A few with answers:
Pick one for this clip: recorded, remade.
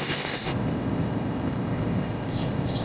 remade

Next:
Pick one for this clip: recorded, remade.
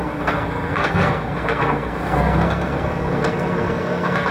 remade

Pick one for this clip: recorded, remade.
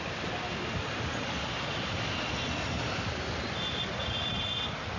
recorded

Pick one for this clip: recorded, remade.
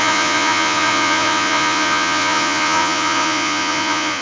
remade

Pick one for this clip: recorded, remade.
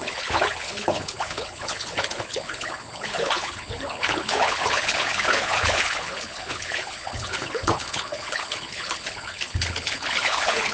remade